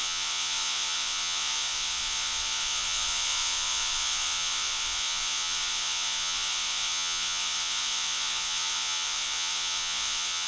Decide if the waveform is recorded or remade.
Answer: remade